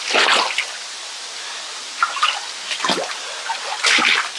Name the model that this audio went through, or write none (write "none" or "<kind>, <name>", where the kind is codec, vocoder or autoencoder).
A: none